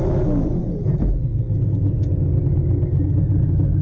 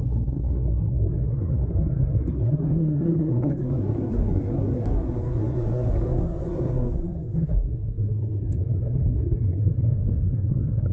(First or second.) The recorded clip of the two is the first